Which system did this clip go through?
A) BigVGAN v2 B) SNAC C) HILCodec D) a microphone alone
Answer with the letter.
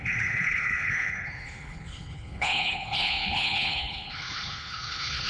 C